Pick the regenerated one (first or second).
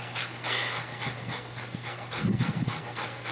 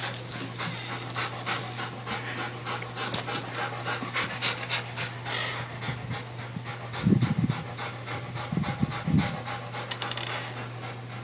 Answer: first